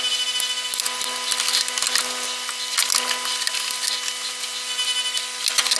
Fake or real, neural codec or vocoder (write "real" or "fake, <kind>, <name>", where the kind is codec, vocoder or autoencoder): real